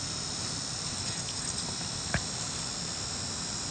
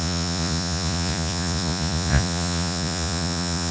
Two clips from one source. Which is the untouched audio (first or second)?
first